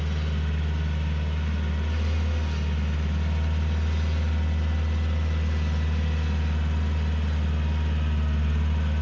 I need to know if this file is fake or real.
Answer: real